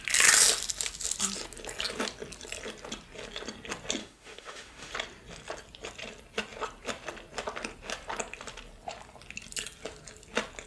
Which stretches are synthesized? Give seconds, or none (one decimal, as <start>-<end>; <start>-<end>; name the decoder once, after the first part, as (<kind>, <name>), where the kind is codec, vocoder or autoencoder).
4.0-4.9 (autoencoder, DAC-VAE)